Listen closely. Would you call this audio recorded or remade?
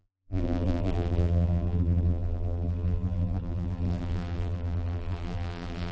remade